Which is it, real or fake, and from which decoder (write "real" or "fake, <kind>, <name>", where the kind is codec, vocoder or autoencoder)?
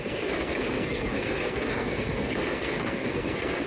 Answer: fake, codec, SNAC